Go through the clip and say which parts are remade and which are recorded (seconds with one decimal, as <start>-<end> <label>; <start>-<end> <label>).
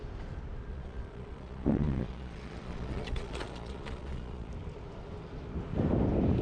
0.0-0.7 recorded; 0.7-4.5 remade; 4.5-6.4 recorded